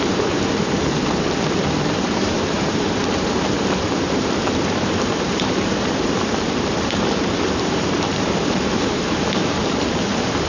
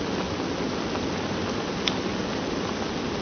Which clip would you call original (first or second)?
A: second